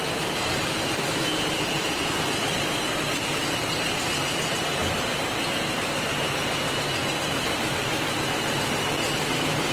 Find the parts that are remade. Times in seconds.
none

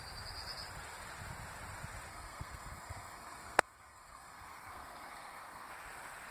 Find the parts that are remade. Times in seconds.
2.1-5.7 (codec, SNAC)